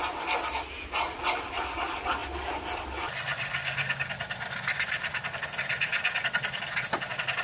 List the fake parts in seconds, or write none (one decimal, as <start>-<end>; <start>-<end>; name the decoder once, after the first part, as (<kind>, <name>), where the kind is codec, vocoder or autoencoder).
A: none